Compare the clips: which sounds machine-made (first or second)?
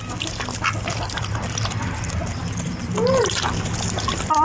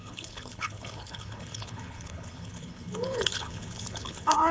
second